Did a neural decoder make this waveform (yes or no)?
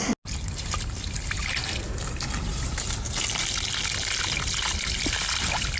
no